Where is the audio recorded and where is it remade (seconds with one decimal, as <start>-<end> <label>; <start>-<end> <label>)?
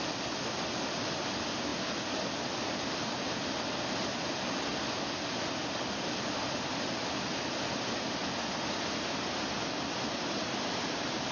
0.0-11.3 recorded